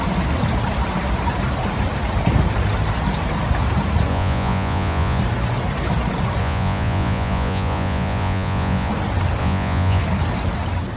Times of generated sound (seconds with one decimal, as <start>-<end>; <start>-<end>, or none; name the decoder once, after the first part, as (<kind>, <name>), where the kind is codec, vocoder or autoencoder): 4.1-5.2 (vocoder, Vocos); 6.4-8.9; 9.4-10.0